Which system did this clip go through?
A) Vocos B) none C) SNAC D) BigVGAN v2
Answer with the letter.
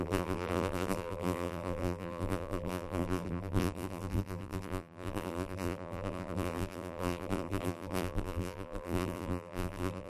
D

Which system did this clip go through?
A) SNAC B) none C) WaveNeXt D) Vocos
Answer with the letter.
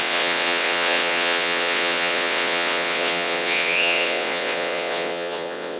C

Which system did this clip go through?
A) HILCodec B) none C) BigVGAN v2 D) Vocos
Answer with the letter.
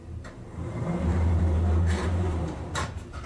C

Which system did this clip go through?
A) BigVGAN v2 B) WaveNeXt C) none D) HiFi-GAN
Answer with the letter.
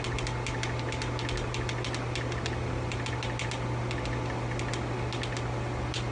C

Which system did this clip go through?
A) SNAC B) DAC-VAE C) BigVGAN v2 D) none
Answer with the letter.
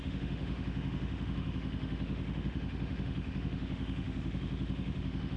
B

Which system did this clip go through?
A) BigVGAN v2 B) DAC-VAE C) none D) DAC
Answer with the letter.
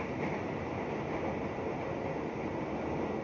C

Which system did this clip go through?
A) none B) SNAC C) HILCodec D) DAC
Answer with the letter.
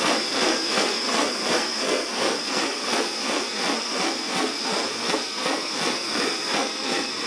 B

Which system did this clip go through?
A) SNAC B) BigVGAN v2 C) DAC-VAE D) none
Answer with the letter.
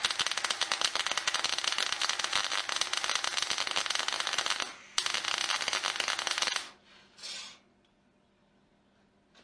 D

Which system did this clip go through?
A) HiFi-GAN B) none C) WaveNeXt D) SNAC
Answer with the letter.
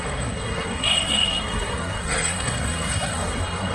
D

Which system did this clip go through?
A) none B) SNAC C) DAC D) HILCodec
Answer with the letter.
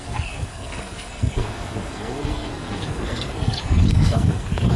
B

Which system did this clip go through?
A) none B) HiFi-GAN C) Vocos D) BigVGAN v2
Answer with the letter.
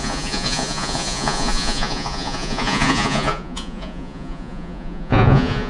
C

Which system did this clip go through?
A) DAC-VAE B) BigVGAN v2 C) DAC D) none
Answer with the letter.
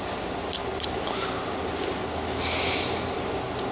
D